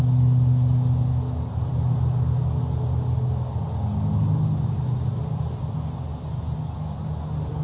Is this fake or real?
real